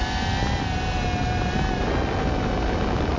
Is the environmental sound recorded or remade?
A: recorded